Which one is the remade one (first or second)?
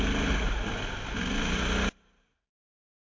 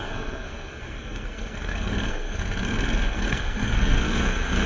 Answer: second